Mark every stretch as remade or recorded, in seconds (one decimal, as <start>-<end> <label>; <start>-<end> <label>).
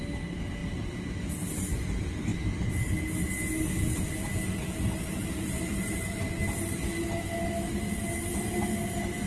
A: 0.0-4.7 recorded; 4.7-6.3 remade; 6.3-9.3 recorded